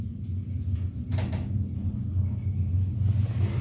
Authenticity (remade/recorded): recorded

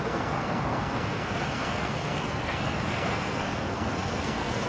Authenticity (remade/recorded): remade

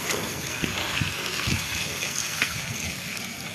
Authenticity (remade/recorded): remade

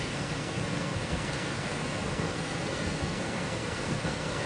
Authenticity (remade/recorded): remade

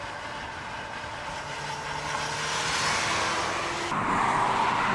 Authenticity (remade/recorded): recorded